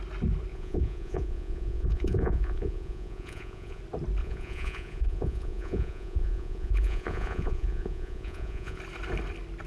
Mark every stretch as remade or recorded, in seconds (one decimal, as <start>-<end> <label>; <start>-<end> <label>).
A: 0.0-0.5 recorded; 0.5-3.8 remade; 3.8-4.2 recorded; 4.2-8.8 remade; 8.8-9.7 recorded